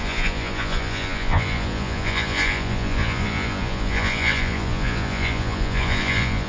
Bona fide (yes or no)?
no